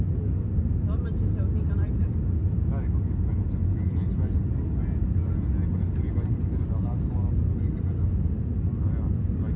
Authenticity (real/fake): real